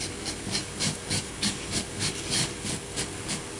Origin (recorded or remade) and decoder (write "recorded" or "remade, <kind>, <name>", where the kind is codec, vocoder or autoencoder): remade, codec, DAC